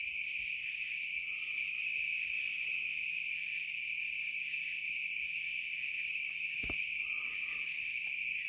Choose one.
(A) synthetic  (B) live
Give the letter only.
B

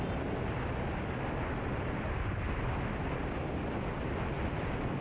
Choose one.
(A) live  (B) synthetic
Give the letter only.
A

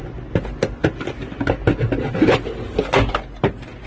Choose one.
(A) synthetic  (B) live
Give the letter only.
B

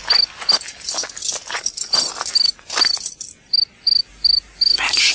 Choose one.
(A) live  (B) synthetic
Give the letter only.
A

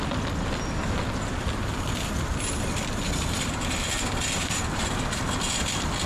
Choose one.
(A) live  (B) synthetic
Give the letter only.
A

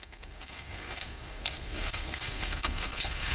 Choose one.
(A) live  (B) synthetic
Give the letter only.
B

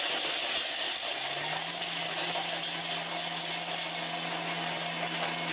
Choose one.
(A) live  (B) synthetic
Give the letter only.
A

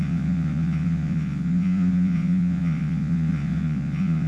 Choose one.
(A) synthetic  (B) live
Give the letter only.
A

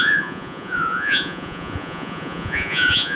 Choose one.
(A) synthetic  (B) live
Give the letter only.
A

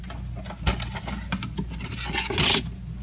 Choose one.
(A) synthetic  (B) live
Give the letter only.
B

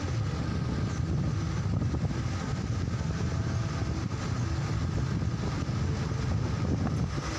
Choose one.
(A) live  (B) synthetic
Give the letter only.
A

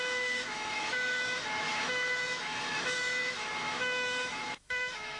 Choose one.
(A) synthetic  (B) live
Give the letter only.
A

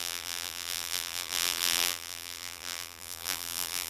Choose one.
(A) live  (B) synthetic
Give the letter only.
B